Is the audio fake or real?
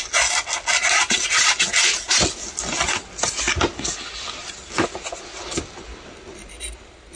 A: real